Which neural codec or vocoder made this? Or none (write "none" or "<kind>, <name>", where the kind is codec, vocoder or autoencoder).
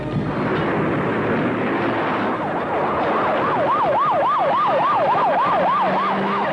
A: none